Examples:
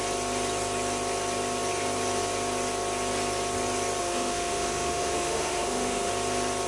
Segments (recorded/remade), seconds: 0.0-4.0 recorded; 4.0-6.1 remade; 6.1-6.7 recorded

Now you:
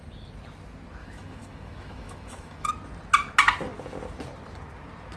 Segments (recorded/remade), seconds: 0.0-1.0 recorded; 1.0-2.7 remade; 2.7-5.2 recorded

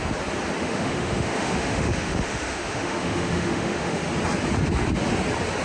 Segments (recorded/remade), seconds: 0.0-0.6 recorded; 0.6-4.0 remade; 4.0-5.6 recorded

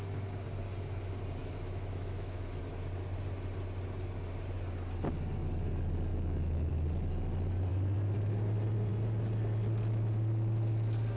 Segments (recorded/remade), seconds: 0.0-1.4 recorded; 1.4-2.6 remade; 2.6-6.1 recorded; 6.1-6.7 remade; 6.7-11.2 recorded

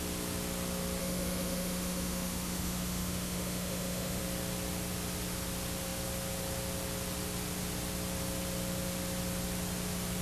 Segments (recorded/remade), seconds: 0.0-1.0 recorded; 1.0-4.2 remade; 4.2-10.2 recorded